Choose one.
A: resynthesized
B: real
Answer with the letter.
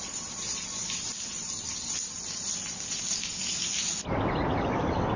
B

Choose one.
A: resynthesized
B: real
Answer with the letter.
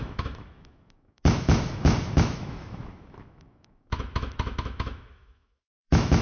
A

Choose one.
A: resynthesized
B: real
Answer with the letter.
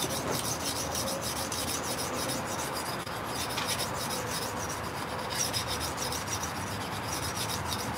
B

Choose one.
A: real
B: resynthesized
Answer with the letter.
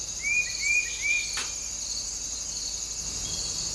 A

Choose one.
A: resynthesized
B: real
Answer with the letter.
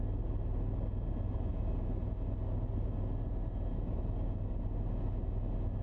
B